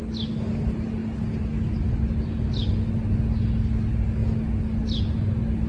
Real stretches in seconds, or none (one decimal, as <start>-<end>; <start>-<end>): 0.0-5.7